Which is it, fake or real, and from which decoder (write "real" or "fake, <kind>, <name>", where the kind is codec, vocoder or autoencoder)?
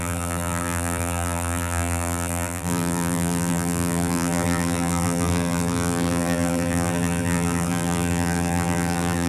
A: fake, vocoder, BigVGAN v2